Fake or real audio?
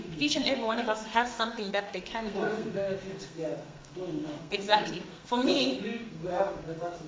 fake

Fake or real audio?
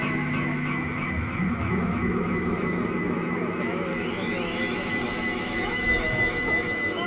fake